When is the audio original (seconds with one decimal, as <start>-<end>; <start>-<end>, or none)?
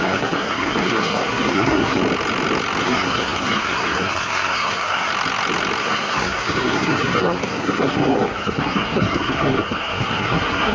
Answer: 2.0-2.8; 5.1-5.8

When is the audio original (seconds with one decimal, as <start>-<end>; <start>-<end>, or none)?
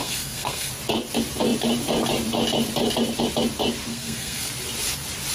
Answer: 0.7-3.9; 4.5-5.3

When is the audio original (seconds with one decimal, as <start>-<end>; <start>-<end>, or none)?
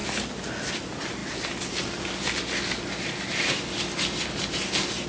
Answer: 0.0-5.1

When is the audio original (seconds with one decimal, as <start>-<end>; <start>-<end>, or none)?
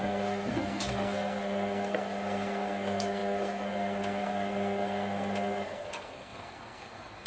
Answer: none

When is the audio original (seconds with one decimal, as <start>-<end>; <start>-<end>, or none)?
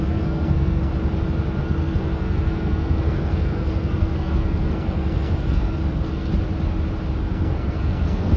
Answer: 0.9-1.6; 6.3-7.2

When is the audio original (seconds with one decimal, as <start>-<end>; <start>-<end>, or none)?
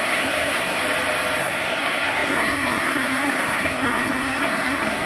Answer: 0.8-1.4